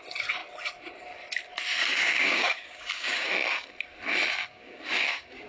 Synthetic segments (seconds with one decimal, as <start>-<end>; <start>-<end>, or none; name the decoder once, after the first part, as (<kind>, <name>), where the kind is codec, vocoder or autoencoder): 1.9-3.3 (codec, DAC); 4.5-5.5